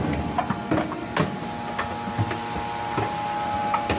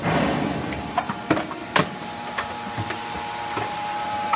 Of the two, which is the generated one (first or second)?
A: second